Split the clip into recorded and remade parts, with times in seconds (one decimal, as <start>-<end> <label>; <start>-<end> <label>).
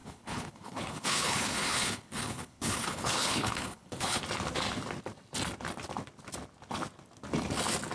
0.0-4.2 remade; 4.2-7.9 recorded